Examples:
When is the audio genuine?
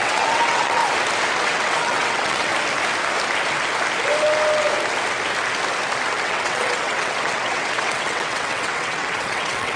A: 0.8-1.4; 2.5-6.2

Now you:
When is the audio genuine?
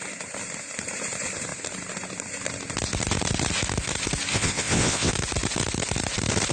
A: 0.0-4.3; 5.1-6.5